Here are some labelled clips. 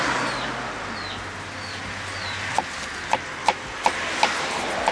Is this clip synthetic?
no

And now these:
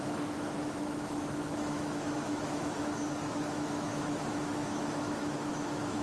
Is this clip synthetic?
yes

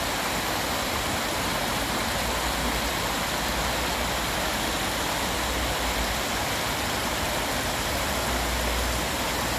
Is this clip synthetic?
no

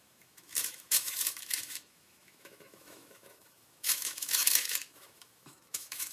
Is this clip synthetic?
yes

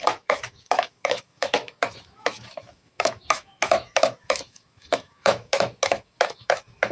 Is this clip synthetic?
yes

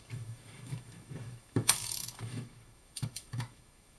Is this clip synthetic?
yes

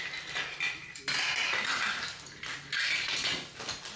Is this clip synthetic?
no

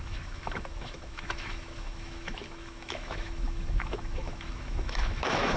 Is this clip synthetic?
yes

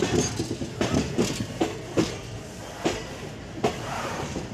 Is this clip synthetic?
no